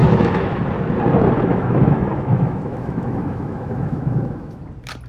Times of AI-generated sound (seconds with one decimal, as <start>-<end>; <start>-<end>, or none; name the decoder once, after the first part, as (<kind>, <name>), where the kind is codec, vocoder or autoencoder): 0.0-0.6 (autoencoder, DAC-VAE); 1.5-4.6